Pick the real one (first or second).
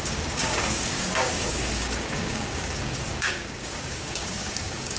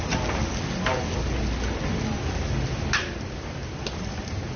second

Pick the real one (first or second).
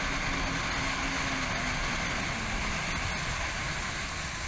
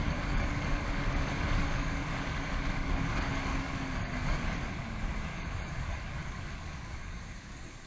first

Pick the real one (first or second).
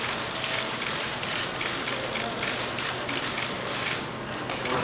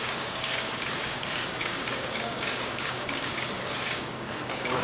first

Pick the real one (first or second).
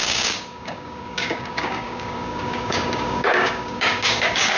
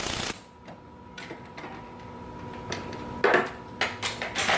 second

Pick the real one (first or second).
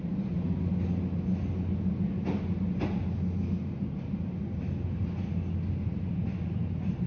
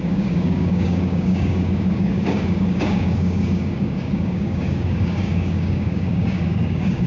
first